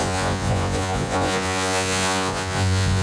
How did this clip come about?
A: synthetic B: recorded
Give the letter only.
A